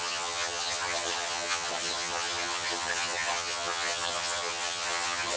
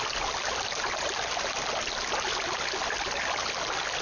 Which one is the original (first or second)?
second